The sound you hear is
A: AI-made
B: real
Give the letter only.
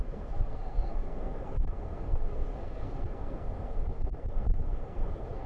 A